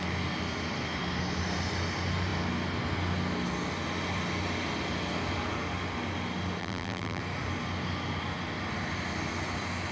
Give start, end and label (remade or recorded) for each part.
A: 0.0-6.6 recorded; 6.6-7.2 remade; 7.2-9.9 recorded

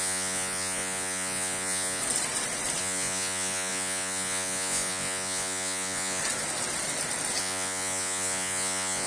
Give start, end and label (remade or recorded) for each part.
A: 0.0-2.0 remade; 2.0-2.8 recorded; 2.8-6.2 remade; 6.2-7.4 recorded; 7.4-9.1 remade

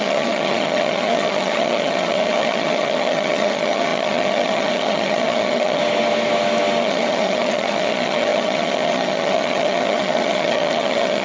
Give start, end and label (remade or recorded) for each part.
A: 0.0-5.8 remade; 5.8-6.8 recorded; 6.8-11.2 remade

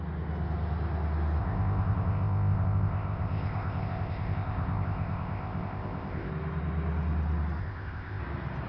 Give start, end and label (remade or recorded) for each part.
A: 0.0-1.4 recorded; 1.4-6.3 remade; 6.3-7.6 recorded; 7.6-8.2 remade; 8.2-8.7 recorded

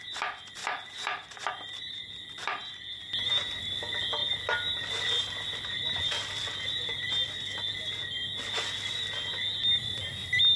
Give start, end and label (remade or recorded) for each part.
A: 0.0-10.6 recorded

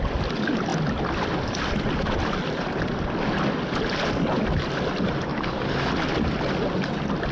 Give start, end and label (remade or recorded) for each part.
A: 0.0-5.3 recorded; 5.3-5.9 remade; 5.9-7.3 recorded

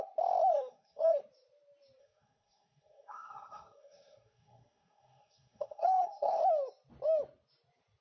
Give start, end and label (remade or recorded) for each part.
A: 0.0-0.5 recorded; 0.5-1.2 remade; 1.2-2.0 recorded; 2.0-6.4 remade; 6.4-8.0 recorded